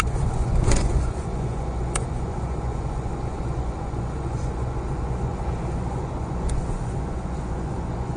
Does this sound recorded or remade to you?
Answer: remade